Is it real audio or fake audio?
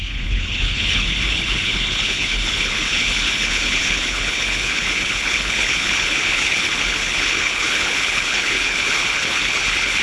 fake